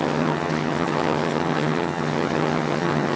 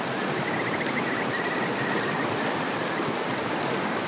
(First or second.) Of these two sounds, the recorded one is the second